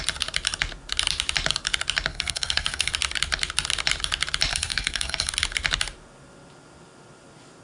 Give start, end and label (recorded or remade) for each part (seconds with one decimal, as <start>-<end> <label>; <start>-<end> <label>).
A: 0.0-2.1 recorded; 2.1-2.9 remade; 2.9-4.5 recorded; 4.5-5.3 remade; 5.3-7.6 recorded